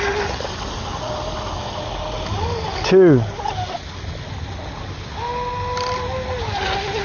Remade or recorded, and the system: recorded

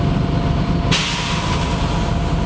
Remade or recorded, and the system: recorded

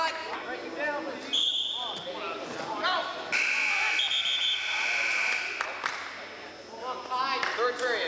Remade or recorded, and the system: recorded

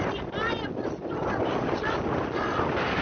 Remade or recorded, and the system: recorded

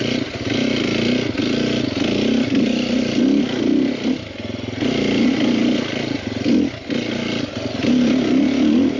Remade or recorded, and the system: recorded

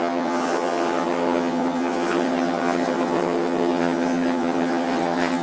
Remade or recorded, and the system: remade, vocoder, HiFi-GAN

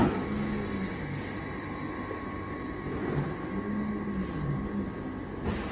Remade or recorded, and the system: recorded